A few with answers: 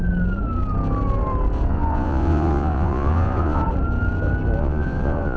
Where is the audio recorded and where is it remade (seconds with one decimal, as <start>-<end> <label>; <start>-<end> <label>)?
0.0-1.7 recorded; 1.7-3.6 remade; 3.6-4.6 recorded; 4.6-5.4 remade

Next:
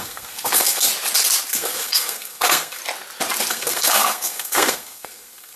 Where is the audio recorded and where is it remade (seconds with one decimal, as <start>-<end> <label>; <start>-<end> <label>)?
0.0-0.9 remade; 0.9-1.5 recorded; 1.5-2.8 remade; 2.8-3.5 recorded; 3.5-5.6 remade

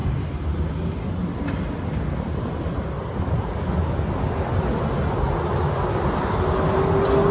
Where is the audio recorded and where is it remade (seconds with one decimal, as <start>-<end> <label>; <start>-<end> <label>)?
0.0-7.3 recorded

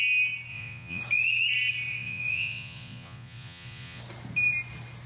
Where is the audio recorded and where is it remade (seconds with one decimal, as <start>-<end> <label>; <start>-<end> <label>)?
0.0-0.5 recorded; 0.5-1.0 remade; 1.0-1.9 recorded; 1.9-4.0 remade; 4.0-5.1 recorded

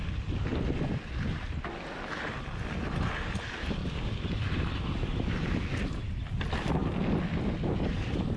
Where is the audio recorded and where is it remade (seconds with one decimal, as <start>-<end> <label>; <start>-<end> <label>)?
0.0-0.5 recorded; 0.5-2.2 remade; 2.2-3.8 recorded; 3.8-5.2 remade; 5.2-8.4 recorded